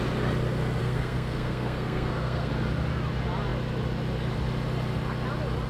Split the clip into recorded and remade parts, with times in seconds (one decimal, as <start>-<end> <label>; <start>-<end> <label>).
0.0-0.8 recorded; 0.8-2.5 remade; 2.5-5.7 recorded